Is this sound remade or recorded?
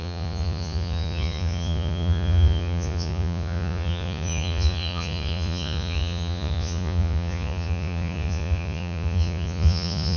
remade